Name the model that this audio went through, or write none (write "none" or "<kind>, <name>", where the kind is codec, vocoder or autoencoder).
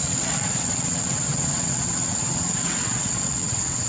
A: vocoder, WaveNeXt